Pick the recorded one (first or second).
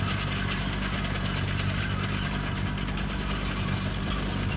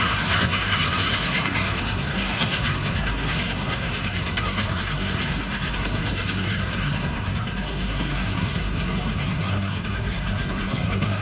first